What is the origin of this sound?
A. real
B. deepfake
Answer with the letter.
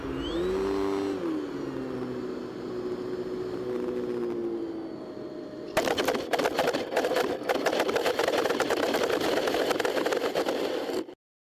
A